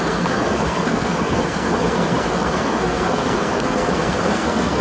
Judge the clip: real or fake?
fake